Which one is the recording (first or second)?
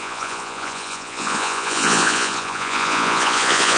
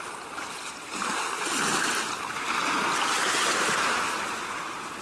second